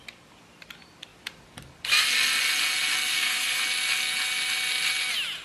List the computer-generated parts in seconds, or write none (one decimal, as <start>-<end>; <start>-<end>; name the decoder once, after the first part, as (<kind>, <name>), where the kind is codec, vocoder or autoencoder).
3.1-3.6 (codec, SNAC)